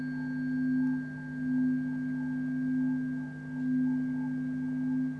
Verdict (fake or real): real